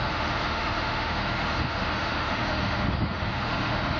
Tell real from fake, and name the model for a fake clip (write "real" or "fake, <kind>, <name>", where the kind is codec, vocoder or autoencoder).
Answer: fake, autoencoder, DAC-VAE